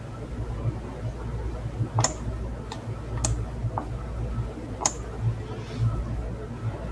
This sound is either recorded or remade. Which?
recorded